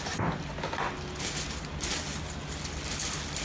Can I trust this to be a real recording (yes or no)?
yes